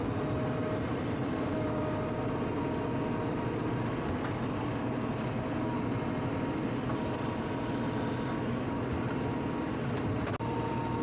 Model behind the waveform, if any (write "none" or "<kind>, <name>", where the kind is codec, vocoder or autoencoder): none